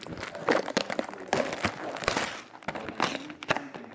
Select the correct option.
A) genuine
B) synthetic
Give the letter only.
A